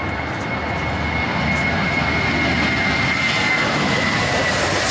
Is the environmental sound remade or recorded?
recorded